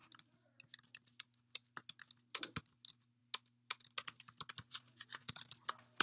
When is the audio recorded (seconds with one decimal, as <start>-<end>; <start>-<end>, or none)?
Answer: 0.0-4.7; 5.3-6.0